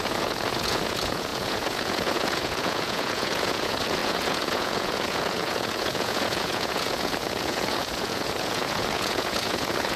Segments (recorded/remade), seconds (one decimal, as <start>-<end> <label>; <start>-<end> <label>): 0.0-10.0 remade

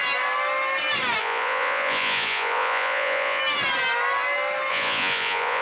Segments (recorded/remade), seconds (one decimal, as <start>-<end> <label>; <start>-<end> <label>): 0.0-1.2 recorded; 1.2-3.4 remade; 3.4-4.7 recorded; 4.7-5.6 remade

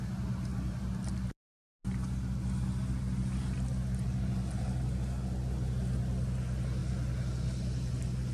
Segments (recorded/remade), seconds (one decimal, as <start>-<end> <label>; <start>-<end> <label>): 0.0-0.5 remade; 0.5-4.6 recorded; 4.6-6.8 remade; 6.8-7.9 recorded; 7.9-8.3 remade

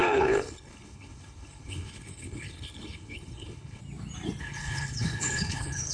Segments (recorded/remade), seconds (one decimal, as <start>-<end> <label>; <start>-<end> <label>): 0.0-3.8 remade; 3.8-4.4 recorded; 4.4-5.9 remade